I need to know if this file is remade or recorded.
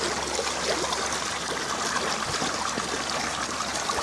recorded